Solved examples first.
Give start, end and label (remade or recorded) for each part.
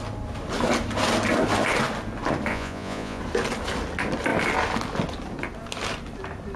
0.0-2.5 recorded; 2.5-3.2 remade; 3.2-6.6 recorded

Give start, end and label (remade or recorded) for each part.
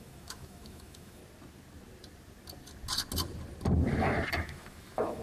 0.0-1.2 remade; 1.2-4.3 recorded; 4.3-5.2 remade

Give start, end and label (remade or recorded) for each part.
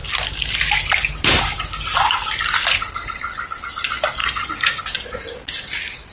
0.0-4.2 recorded; 4.2-4.8 remade; 4.8-6.1 recorded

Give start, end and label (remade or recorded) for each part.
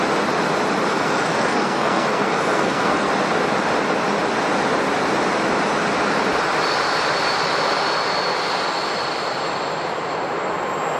0.0-0.9 recorded; 0.9-3.1 remade; 3.1-11.0 recorded